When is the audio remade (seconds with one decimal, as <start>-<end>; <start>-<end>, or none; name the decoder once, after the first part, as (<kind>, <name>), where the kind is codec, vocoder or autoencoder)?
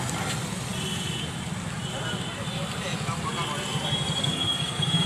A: 4.2-5.1 (codec, SNAC)